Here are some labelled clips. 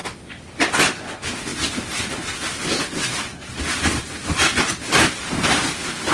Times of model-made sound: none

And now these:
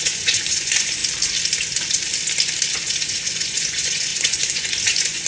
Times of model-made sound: 0.0-1.0; 2.7-5.3

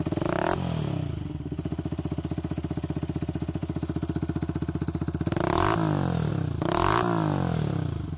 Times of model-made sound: none

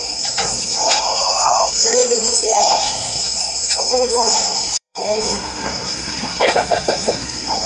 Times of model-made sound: 0.0-7.7

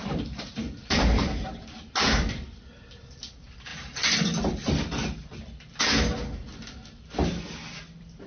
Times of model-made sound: 0.0-1.6; 3.7-5.8

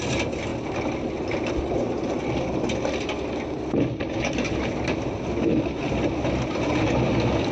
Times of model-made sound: none

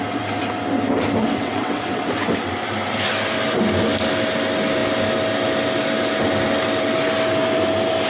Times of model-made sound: 1.2-2.0